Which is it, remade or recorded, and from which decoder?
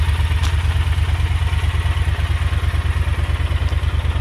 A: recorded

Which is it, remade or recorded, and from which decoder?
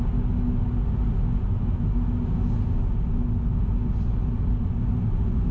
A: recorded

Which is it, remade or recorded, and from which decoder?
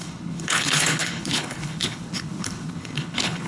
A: remade, codec, HILCodec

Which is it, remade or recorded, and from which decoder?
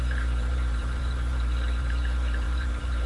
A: remade, vocoder, BigVGAN v2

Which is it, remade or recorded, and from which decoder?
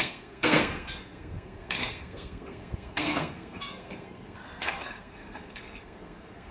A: remade, codec, SNAC